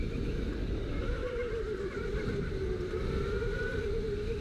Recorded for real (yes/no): yes